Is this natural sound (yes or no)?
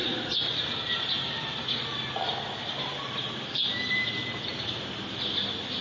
yes